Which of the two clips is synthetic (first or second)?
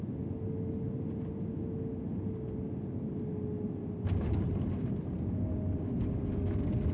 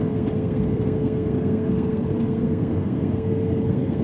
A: second